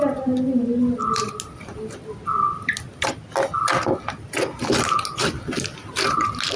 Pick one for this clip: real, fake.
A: real